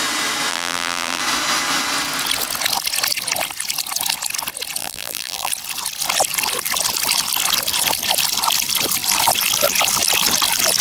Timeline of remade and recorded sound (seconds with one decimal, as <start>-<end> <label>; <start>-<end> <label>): 0.0-0.5 recorded; 0.5-1.2 remade; 1.2-4.8 recorded; 4.8-5.5 remade; 5.5-10.8 recorded